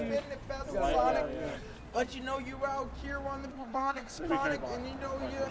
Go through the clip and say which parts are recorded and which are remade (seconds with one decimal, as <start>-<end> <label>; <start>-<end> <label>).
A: 0.0-3.5 recorded; 3.5-4.3 remade; 4.3-5.5 recorded